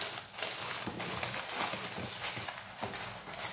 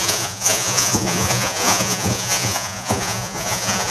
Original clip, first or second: first